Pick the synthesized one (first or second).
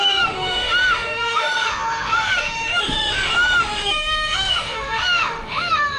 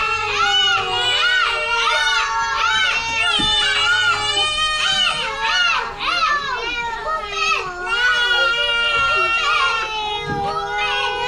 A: first